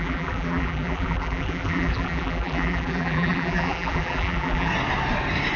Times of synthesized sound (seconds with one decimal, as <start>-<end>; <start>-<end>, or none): 0.0-4.7